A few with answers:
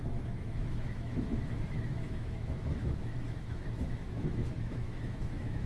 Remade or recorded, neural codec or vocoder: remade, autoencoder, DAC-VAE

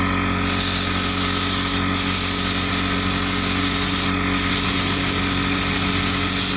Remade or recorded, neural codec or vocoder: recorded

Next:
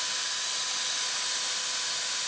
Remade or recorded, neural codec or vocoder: recorded